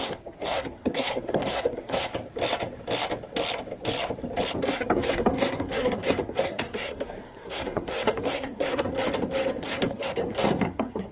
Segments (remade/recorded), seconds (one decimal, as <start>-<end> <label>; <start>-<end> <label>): 0.0-2.1 remade; 2.1-4.7 recorded; 4.7-8.9 remade; 8.9-9.6 recorded; 9.6-11.1 remade